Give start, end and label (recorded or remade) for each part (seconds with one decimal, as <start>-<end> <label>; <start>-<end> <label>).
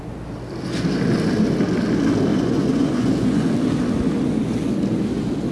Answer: 0.0-2.3 recorded; 2.3-3.5 remade; 3.5-5.5 recorded